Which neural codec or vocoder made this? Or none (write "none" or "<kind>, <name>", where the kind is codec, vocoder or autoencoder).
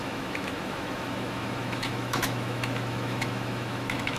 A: autoencoder, DAC-VAE